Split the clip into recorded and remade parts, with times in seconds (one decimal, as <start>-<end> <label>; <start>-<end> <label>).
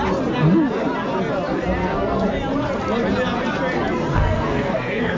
0.0-1.8 recorded; 1.8-2.3 remade; 2.3-4.1 recorded; 4.1-5.2 remade